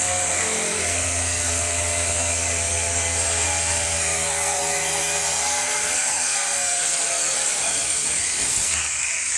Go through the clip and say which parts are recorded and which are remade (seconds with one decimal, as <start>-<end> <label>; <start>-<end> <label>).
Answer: 0.0-9.4 remade